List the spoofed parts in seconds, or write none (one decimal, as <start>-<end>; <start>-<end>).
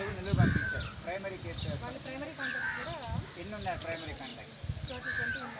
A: none